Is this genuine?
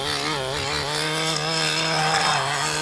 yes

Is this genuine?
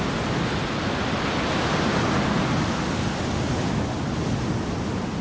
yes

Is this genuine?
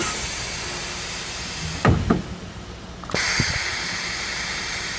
yes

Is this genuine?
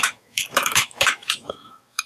no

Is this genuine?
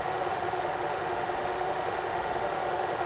no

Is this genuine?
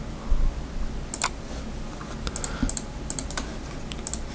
yes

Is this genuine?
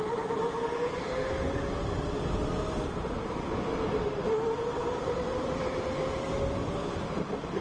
yes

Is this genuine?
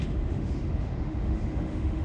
no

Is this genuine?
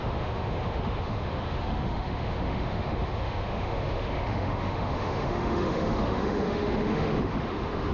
no